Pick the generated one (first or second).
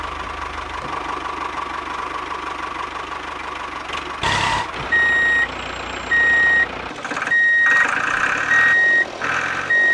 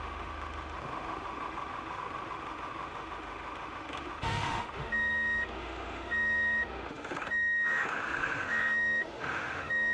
second